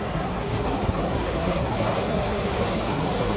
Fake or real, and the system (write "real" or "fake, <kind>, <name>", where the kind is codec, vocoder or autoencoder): fake, codec, SNAC